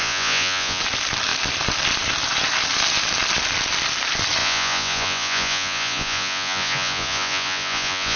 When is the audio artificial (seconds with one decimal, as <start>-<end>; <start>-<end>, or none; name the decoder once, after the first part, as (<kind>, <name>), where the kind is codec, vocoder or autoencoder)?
0.0-0.8 (vocoder, Vocos); 4.4-8.2